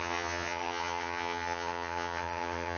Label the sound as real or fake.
fake